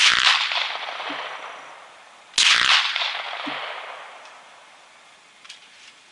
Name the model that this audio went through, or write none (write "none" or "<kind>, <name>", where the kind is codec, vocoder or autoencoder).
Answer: none